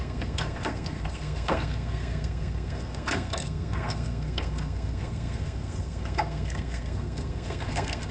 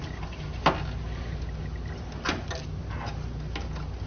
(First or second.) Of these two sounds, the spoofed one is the first